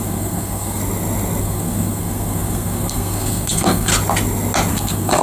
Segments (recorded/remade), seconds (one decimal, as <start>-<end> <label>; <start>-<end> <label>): 0.0-0.8 remade; 0.8-1.4 recorded; 1.4-3.9 remade; 3.9-4.7 recorded; 4.7-5.2 remade